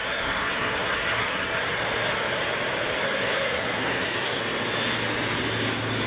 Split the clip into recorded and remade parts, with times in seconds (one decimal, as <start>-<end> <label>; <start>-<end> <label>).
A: 0.0-1.6 remade; 1.6-3.0 recorded; 3.0-4.4 remade; 4.4-6.1 recorded